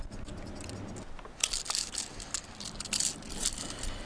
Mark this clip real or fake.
real